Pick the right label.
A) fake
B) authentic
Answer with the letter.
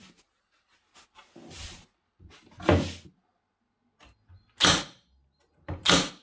B